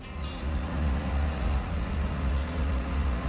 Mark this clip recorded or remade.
remade